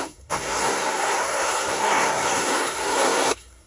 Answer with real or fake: fake